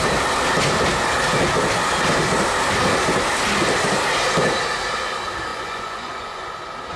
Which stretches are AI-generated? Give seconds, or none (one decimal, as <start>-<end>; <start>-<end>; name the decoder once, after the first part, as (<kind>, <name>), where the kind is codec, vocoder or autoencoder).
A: 5.5-6.5 (vocoder, Vocos)